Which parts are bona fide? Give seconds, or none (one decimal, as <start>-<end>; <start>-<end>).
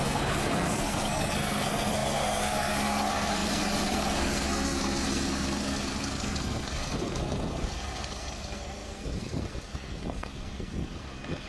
none